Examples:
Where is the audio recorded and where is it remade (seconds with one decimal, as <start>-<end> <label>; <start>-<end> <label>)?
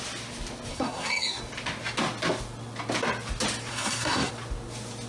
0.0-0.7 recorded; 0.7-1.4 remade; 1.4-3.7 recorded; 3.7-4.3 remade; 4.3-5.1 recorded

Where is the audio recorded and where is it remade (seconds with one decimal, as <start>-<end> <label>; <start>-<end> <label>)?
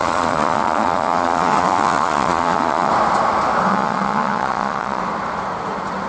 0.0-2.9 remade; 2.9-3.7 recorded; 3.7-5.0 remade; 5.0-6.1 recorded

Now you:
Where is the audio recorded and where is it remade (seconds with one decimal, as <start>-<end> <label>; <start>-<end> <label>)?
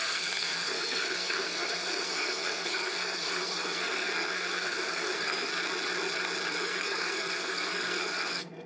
0.0-5.5 remade; 5.5-6.5 recorded; 6.5-8.7 remade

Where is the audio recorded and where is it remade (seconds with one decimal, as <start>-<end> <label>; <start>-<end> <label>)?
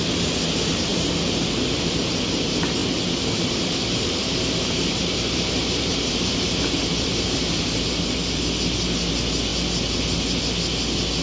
0.0-0.9 recorded; 0.9-2.1 remade; 2.1-2.8 recorded; 2.8-7.9 remade; 7.9-11.2 recorded